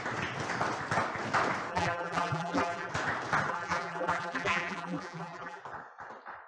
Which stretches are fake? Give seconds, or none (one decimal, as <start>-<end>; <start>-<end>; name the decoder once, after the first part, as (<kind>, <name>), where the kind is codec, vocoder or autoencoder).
1.7-2.9 (vocoder, BigVGAN v2); 3.5-5.6